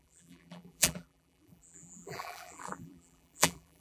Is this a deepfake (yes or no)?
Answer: yes